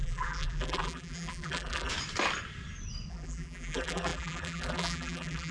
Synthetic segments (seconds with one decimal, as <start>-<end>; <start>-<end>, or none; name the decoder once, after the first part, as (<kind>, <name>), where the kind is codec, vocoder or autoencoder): 0.0-1.9 (vocoder, BigVGAN v2); 3.1-5.5